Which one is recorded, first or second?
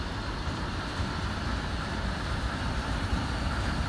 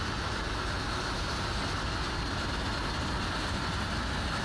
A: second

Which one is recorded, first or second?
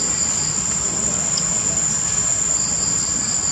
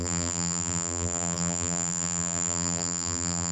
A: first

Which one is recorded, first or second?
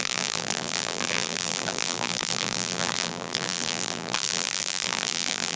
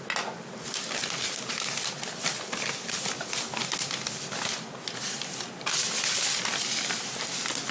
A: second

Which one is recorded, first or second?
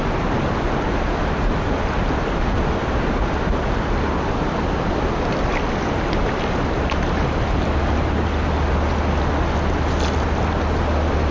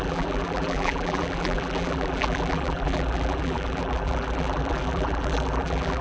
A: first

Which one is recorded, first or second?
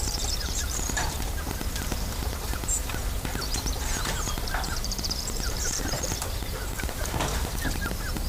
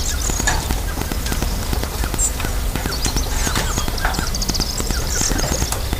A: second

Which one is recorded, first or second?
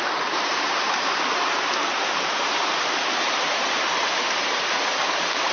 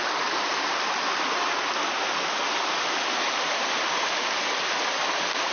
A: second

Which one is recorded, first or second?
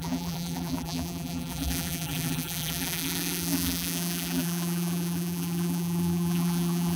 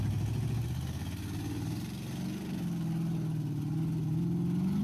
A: second